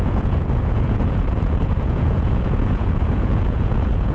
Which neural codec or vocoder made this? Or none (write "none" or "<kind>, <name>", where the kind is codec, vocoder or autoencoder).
vocoder, Vocos